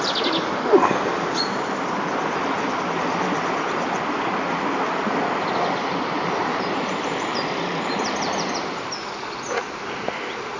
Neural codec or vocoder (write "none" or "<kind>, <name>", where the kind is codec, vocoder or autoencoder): none